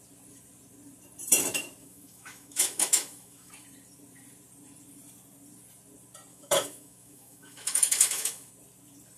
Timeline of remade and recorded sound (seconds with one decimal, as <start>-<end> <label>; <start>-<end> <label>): 0.0-1.8 recorded; 1.8-3.5 remade; 3.5-6.3 recorded; 6.3-8.5 remade; 8.5-9.2 recorded